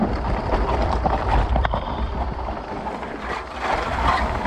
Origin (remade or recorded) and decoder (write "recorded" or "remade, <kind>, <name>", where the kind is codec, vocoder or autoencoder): remade, vocoder, BigVGAN v2